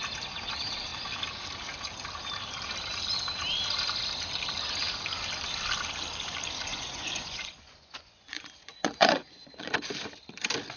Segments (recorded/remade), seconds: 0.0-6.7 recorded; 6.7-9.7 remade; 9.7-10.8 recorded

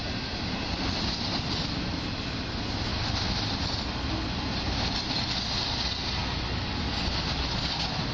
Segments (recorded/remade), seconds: 0.0-8.1 recorded